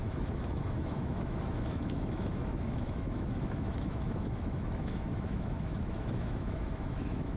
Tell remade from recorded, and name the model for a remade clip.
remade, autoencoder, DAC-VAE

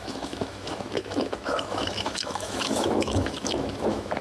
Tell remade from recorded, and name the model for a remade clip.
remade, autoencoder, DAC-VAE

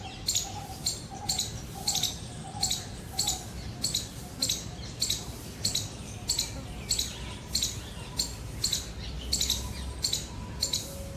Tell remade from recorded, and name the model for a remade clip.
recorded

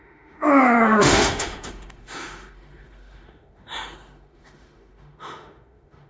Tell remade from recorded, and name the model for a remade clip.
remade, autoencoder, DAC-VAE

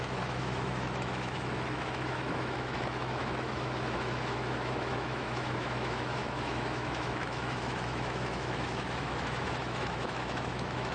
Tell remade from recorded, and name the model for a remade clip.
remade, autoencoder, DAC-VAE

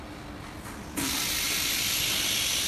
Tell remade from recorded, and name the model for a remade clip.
recorded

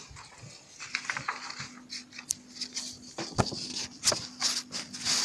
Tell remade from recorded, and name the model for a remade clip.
recorded